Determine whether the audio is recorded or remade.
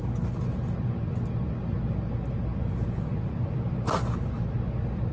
recorded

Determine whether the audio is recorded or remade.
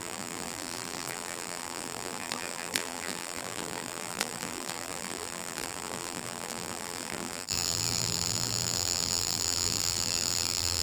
remade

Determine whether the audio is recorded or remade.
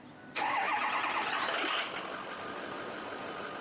recorded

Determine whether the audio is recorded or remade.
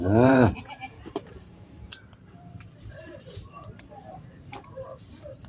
remade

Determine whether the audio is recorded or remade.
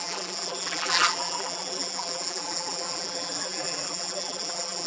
remade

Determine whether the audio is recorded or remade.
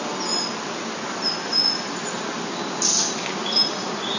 recorded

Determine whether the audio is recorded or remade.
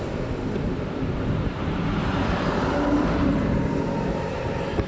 remade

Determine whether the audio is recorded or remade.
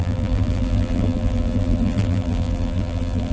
remade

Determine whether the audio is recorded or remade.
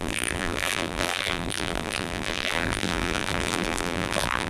remade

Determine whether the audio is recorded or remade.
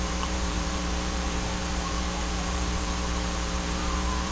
remade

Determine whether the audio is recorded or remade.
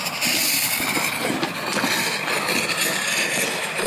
recorded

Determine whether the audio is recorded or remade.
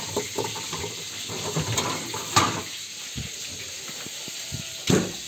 remade